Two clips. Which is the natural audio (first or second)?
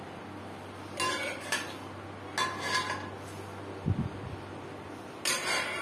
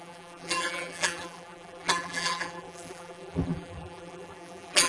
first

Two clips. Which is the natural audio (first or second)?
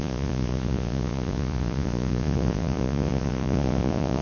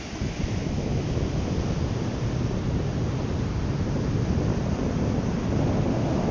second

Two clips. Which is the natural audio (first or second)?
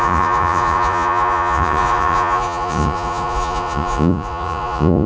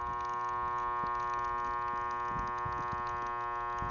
second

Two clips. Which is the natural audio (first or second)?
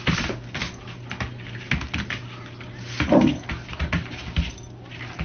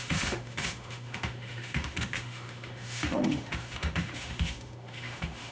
first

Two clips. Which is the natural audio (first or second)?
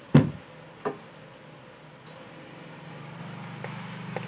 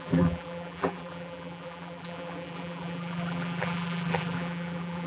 first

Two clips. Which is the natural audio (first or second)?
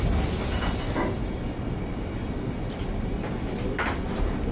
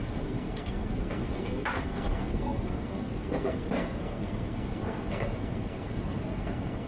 first